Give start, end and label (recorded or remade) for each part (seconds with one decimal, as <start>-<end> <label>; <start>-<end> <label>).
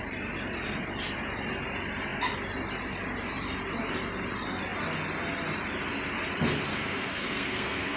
0.0-6.7 recorded; 6.7-8.0 remade